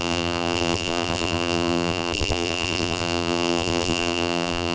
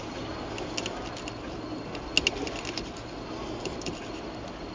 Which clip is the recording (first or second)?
second